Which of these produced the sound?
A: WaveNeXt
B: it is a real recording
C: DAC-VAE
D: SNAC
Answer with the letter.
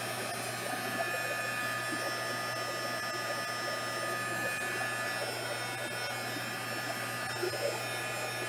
B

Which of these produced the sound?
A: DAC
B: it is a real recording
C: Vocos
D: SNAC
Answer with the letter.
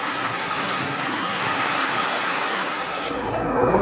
D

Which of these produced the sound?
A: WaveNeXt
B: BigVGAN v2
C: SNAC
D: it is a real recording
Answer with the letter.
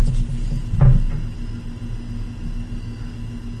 D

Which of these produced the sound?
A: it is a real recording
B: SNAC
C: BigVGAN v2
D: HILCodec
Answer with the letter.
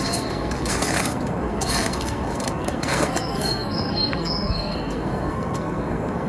B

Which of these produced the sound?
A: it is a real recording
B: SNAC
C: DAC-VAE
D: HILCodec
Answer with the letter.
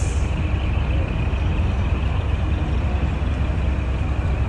A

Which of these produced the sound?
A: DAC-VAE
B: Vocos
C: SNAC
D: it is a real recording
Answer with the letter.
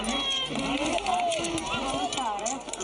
D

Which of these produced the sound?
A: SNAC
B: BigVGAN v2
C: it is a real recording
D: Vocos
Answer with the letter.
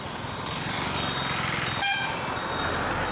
C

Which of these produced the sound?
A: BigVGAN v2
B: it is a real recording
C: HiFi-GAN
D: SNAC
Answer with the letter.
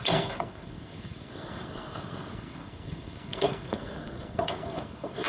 D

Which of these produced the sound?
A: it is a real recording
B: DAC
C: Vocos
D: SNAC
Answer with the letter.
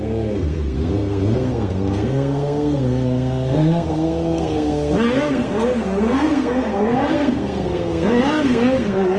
D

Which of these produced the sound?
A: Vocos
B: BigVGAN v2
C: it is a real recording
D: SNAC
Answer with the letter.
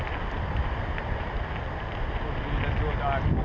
C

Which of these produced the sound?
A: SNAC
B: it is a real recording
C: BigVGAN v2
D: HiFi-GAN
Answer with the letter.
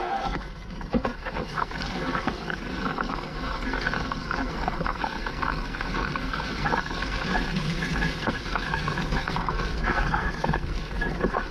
A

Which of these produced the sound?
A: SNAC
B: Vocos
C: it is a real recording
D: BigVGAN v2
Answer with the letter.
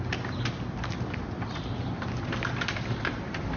C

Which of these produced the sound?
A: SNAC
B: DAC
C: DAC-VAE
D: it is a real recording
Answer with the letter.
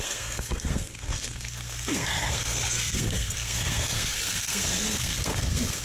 A